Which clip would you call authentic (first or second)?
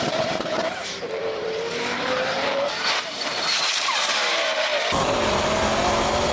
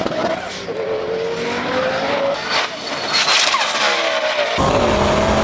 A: second